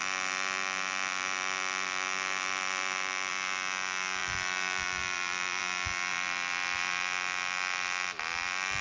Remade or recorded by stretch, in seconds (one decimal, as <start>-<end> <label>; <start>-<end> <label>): 0.0-3.3 remade; 3.3-4.2 recorded; 4.2-5.6 remade; 5.6-6.1 recorded; 6.1-8.8 remade